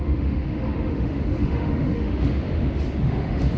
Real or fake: fake